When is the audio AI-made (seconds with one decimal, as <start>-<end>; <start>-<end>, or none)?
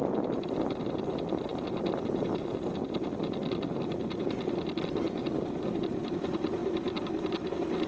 none